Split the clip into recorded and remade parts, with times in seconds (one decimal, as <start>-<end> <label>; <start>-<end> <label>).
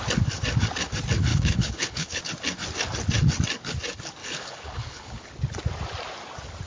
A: 0.0-1.3 recorded; 1.3-2.2 remade; 2.2-4.2 recorded; 4.2-5.3 remade; 5.3-6.7 recorded